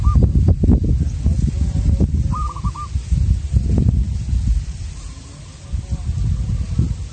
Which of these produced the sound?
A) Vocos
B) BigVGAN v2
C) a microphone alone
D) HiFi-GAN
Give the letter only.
C